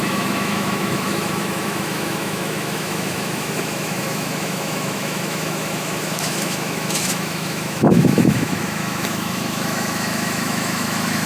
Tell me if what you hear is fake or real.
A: fake